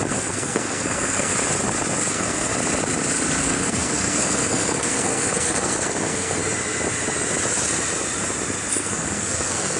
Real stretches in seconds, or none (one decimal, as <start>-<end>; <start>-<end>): 1.3-2.1; 2.5-3.4; 6.4-8.7